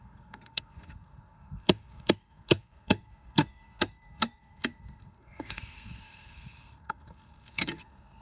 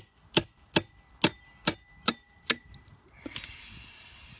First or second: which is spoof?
first